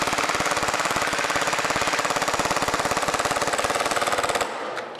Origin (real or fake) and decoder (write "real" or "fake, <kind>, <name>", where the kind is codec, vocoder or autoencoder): real